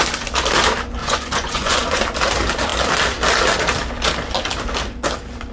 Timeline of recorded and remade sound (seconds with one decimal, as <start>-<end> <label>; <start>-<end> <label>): 0.0-1.0 recorded; 1.0-2.0 remade; 2.0-5.5 recorded